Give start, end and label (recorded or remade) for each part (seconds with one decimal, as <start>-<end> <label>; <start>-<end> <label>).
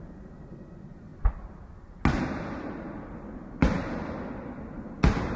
0.0-5.4 recorded